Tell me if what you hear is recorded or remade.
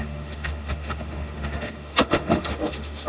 remade